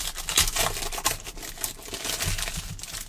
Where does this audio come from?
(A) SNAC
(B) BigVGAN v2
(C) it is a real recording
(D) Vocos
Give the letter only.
C